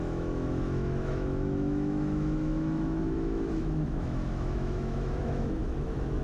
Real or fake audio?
fake